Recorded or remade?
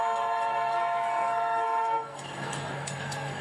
remade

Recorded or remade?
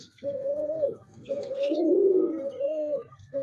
remade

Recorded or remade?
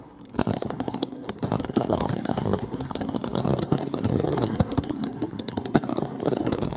remade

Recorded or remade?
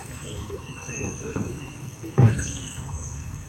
remade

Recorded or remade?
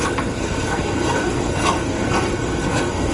remade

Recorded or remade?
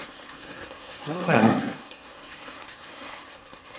remade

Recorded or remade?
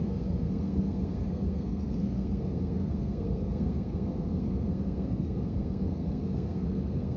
remade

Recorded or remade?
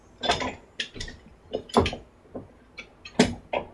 recorded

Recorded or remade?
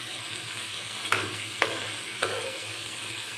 remade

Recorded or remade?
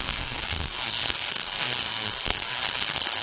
remade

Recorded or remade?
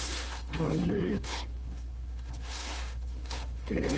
remade